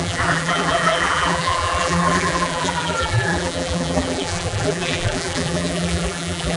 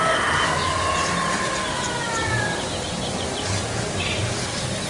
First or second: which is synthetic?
first